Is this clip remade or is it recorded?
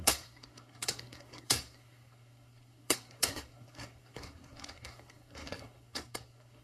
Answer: remade